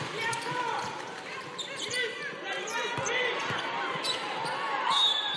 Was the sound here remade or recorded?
remade